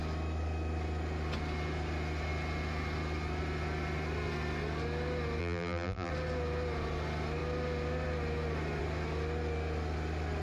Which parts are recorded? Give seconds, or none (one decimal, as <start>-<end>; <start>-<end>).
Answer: 0.0-5.4; 6.1-10.4